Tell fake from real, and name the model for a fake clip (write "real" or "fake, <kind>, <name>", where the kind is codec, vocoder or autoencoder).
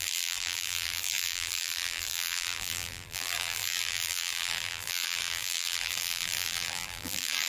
fake, vocoder, BigVGAN v2